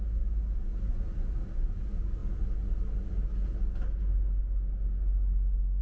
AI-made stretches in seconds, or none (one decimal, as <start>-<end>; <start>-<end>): none